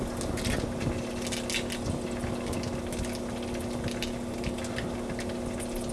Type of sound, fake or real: real